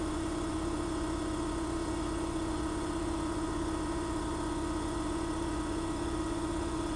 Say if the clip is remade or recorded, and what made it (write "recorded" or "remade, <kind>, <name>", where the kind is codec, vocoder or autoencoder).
remade, vocoder, Vocos